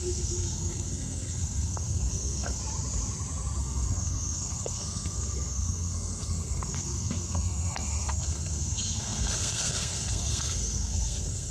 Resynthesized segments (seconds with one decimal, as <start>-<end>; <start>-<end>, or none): 0.0-2.6; 3.6-11.5